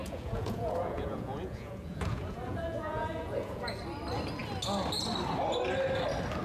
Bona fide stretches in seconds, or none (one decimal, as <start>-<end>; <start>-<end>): 3.8-6.4